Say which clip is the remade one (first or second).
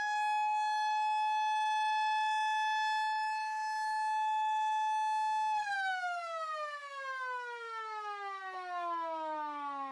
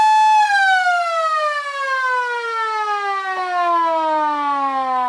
first